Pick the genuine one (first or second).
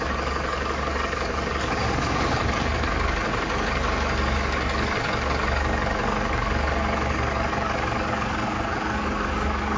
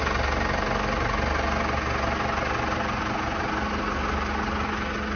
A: second